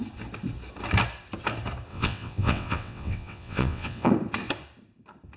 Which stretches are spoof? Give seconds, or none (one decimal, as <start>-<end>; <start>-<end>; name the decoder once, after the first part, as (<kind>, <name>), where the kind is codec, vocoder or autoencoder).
1.9-4.1 (vocoder, WaveNeXt)